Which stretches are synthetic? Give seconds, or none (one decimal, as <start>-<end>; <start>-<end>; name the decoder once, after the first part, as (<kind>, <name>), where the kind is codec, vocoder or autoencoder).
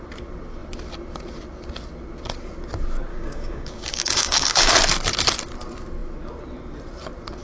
3.1-4.7 (codec, DAC)